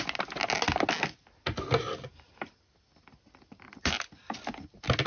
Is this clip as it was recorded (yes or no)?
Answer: yes